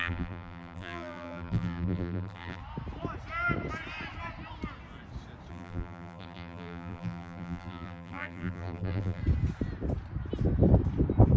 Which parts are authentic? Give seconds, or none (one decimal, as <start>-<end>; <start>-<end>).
2.6-5.5; 9.2-11.4